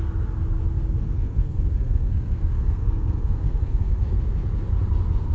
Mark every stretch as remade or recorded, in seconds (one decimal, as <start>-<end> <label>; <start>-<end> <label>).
0.0-1.0 recorded; 1.0-4.2 remade; 4.2-5.3 recorded